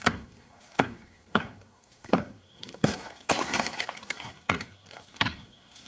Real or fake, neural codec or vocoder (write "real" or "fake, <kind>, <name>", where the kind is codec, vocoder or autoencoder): fake, codec, SNAC